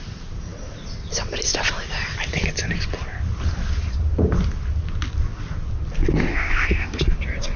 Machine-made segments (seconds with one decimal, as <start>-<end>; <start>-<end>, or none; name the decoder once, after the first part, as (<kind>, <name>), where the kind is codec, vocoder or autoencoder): 6.3-7.0 (codec, ZipCodec)